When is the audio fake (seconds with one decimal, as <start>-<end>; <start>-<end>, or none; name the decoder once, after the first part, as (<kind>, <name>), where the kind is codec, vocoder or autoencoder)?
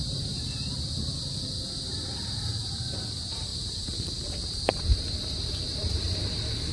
0.0-6.7 (vocoder, BigVGAN v2)